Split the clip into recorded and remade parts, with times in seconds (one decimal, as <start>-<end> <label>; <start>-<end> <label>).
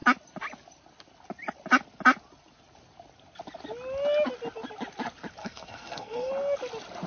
0.0-5.4 recorded; 5.4-6.3 remade; 6.3-7.1 recorded